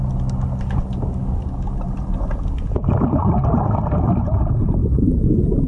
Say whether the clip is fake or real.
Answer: real